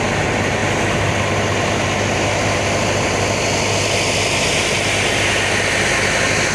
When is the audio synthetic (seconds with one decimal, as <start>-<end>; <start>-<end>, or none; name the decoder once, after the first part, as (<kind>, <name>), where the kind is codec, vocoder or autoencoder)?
none